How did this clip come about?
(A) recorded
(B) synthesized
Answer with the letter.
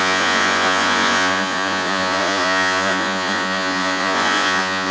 B